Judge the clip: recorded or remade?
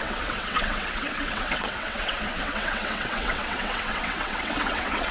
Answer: remade